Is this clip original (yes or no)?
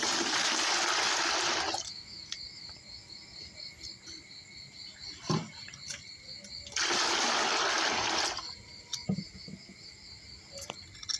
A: yes